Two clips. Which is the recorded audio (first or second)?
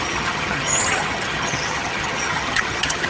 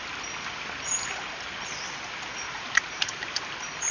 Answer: second